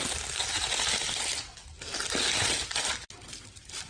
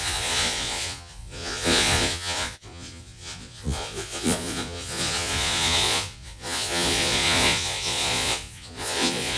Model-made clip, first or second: second